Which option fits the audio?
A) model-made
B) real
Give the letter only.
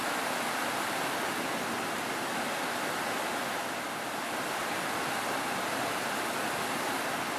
B